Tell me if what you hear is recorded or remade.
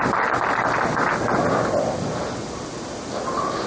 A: recorded